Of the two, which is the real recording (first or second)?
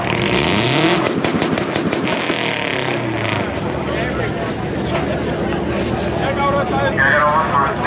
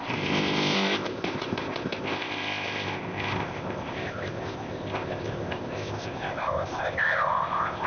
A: first